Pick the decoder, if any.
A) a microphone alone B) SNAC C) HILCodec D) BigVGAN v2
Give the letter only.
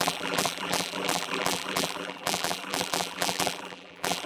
D